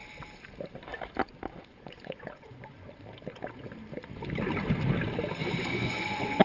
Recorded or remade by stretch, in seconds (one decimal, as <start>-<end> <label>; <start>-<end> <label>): 0.0-1.7 recorded; 1.7-2.9 remade; 2.9-5.4 recorded; 5.4-6.4 remade